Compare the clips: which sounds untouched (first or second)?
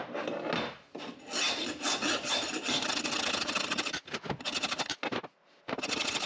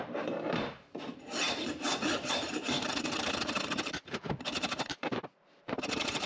first